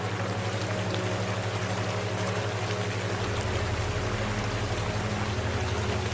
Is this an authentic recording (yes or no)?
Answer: yes